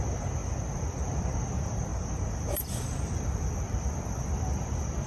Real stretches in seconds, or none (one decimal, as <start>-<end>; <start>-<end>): none